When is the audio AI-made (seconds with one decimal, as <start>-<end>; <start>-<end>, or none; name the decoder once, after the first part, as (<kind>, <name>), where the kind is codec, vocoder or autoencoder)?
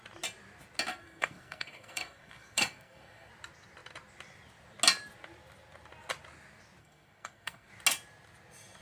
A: 0.9-3.3 (codec, SNAC); 6.8-7.7